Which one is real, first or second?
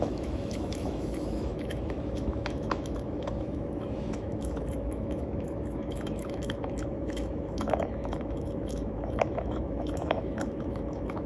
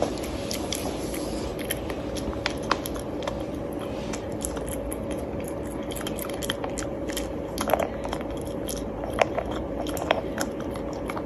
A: second